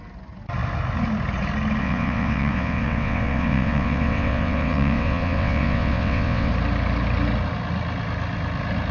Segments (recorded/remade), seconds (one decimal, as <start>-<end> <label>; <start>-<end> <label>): 0.0-1.8 recorded; 1.8-6.5 remade; 6.5-8.9 recorded